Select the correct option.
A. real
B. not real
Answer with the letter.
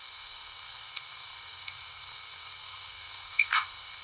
B